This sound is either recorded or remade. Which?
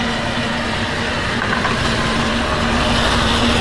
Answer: recorded